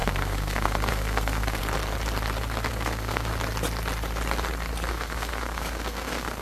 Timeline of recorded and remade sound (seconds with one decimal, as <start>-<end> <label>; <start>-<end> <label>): 0.0-1.6 remade; 1.6-2.7 recorded; 2.7-3.3 remade; 3.3-4.9 recorded; 4.9-6.4 remade